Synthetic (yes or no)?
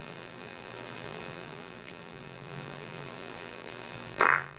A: yes